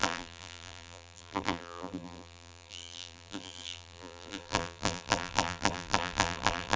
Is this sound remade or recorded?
remade